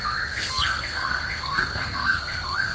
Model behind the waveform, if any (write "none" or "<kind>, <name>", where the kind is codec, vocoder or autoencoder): codec, SNAC